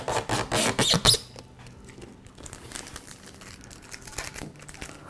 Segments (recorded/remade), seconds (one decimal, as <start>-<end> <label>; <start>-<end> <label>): 0.0-5.1 recorded